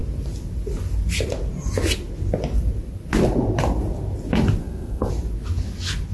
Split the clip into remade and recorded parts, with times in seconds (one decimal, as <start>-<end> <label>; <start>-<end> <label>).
0.0-4.6 recorded; 4.6-5.1 remade; 5.1-6.1 recorded